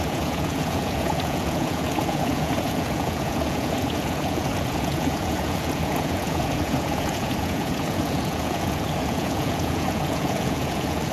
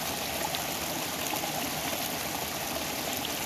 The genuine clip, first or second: second